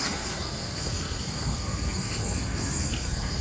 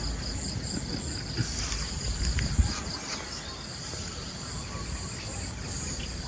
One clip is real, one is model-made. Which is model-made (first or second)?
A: first